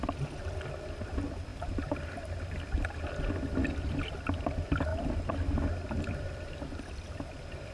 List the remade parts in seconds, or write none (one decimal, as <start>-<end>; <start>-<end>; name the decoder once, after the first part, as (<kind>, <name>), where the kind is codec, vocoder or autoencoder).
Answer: none

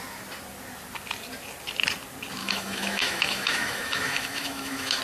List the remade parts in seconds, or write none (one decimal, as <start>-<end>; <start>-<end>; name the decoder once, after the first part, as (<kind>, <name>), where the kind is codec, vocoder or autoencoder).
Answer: 2.4-5.0 (autoencoder, DAC-VAE)